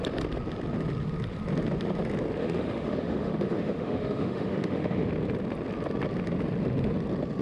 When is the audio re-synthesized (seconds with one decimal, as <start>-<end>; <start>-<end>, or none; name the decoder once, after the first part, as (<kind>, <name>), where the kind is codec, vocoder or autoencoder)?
2.4-5.1 (autoencoder, DAC-VAE)